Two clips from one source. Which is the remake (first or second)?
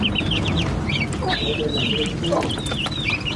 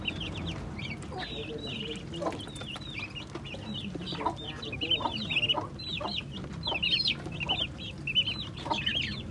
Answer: first